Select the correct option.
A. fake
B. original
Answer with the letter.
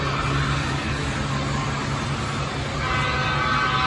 B